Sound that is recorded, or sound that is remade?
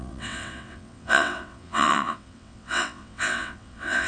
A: remade